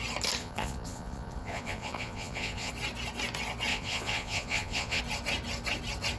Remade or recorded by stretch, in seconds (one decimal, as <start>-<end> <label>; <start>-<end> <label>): 0.0-0.4 recorded; 0.4-2.7 remade; 2.7-3.7 recorded; 3.7-5.0 remade; 5.0-6.2 recorded